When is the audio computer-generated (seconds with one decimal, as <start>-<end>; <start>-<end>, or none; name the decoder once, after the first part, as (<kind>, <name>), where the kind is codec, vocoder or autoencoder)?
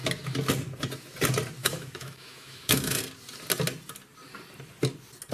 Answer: 1.6-3.0 (autoencoder, DAC-VAE)